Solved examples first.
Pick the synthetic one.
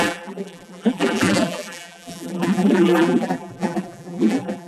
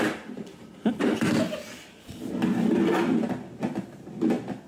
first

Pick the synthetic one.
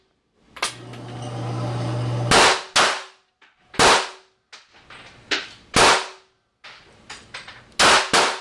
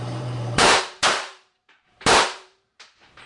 second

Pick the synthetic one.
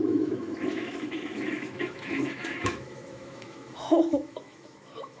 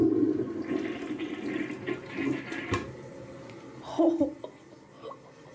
first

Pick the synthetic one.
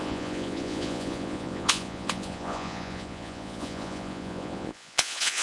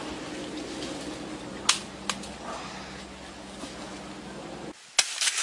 first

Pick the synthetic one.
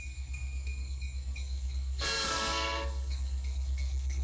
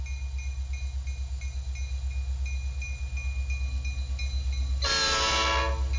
first